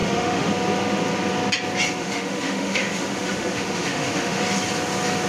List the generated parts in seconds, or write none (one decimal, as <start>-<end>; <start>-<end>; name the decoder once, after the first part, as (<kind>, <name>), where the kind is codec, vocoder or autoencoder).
0.0-0.5 (autoencoder, DAC-VAE); 2.0-4.4